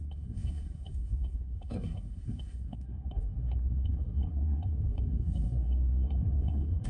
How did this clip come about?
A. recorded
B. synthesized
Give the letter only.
B